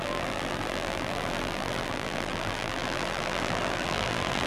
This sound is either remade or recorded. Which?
remade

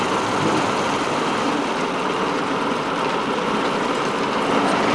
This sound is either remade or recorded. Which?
recorded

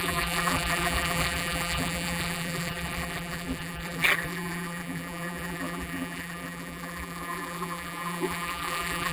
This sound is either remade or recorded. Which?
remade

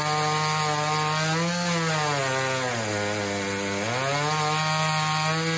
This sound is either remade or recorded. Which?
recorded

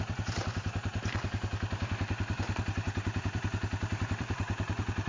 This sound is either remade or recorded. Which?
remade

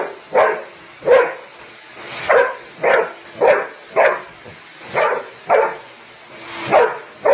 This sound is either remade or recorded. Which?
recorded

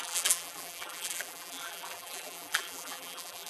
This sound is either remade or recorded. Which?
remade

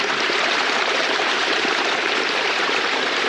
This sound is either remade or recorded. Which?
remade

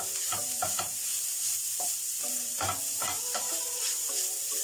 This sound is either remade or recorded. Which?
remade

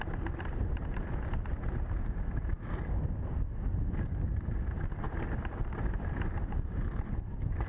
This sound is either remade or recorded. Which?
remade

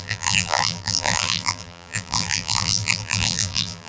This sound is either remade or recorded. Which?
remade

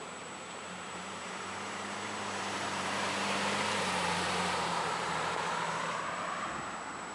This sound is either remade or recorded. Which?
remade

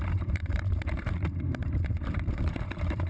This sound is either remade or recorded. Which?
remade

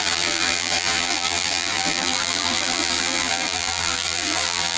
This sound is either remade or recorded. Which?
remade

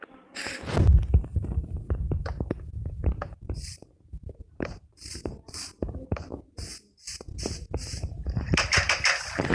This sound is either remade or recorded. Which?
remade